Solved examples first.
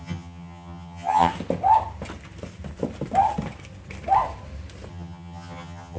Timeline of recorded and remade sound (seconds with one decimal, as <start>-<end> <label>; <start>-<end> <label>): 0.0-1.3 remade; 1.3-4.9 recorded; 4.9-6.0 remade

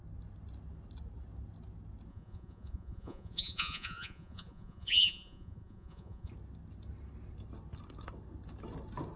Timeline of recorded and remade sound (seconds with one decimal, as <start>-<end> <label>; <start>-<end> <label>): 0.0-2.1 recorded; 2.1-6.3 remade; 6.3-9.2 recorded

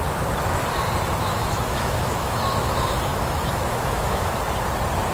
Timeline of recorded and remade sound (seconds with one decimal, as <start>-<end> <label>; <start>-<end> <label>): 0.0-1.3 recorded; 1.3-4.4 remade; 4.4-5.1 recorded